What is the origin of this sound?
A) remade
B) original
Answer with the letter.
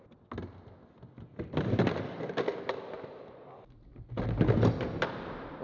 B